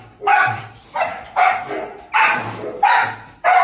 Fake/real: real